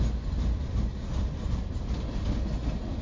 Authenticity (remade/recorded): recorded